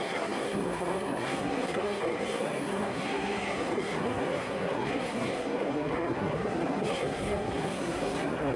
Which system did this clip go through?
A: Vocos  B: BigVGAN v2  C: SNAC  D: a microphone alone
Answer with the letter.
C